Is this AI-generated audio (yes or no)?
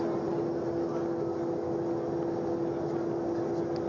no